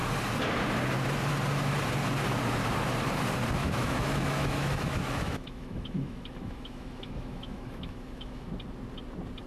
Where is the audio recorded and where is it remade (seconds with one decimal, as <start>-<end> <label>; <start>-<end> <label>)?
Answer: 0.0-3.6 recorded; 3.6-8.5 remade; 8.5-9.5 recorded